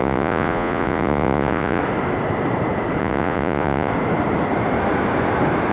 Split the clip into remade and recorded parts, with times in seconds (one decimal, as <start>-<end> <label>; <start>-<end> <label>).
0.0-1.8 remade; 1.8-3.0 recorded; 3.0-3.9 remade; 3.9-5.7 recorded